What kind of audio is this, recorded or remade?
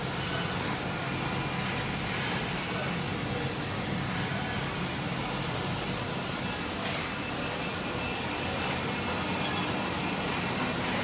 recorded